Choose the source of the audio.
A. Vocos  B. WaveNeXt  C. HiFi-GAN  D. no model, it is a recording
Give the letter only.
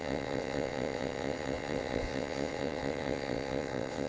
B